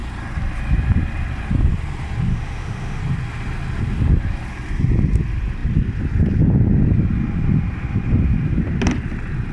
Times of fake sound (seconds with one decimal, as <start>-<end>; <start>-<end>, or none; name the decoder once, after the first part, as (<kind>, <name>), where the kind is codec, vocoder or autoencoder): 2.3-3.0 (autoencoder, DAC-VAE)